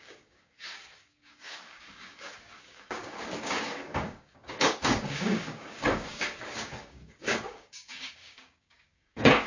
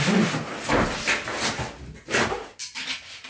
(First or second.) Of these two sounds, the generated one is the first